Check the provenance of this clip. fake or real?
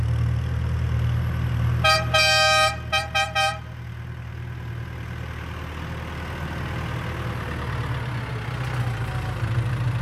real